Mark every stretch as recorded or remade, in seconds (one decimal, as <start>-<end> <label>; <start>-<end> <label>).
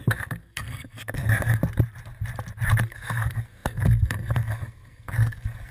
0.0-1.6 remade; 1.6-2.9 recorded; 2.9-5.7 remade